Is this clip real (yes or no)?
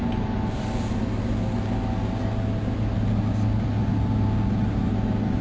yes